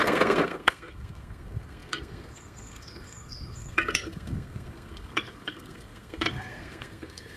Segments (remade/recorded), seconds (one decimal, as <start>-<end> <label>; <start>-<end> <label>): 0.0-7.4 remade